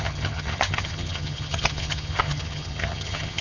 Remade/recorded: remade